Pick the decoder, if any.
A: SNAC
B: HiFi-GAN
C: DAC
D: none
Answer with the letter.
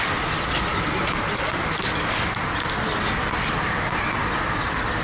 D